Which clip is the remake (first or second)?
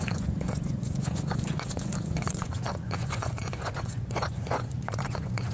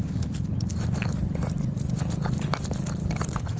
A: first